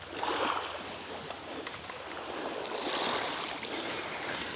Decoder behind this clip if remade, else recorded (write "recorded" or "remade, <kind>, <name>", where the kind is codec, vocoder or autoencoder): recorded